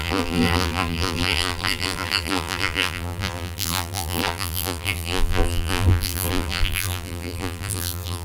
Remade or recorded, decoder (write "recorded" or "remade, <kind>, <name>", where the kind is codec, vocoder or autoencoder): remade, vocoder, BigVGAN v2